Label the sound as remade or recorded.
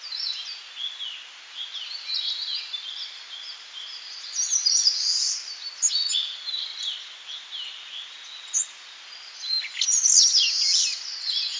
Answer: recorded